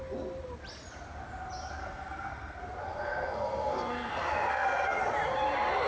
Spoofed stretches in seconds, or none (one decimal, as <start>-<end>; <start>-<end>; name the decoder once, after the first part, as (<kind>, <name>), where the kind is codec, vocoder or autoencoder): 1.8-2.6 (codec, SNAC); 3.0-5.0